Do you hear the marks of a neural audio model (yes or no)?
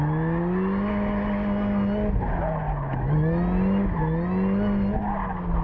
no